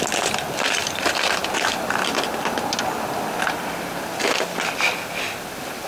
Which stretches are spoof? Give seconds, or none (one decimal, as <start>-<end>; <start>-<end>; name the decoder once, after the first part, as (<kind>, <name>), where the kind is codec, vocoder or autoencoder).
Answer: none